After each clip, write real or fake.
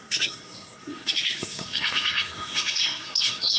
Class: fake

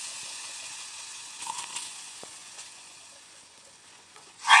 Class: fake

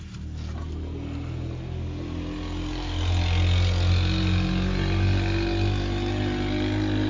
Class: real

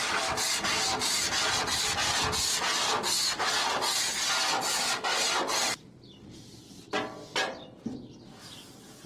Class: real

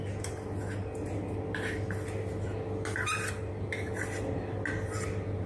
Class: real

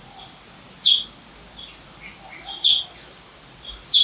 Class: real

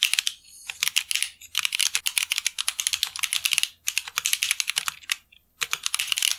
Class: real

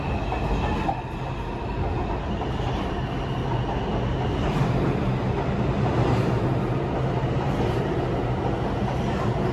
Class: real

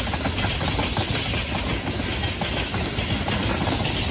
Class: real